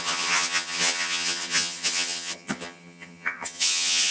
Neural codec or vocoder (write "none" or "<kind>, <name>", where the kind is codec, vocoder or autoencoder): vocoder, HiFi-GAN